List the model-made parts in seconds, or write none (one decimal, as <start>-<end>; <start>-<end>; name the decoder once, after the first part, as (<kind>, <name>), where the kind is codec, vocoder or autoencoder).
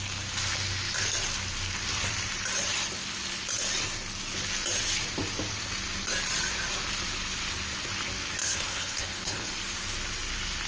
8.4-9.5 (codec, HILCodec)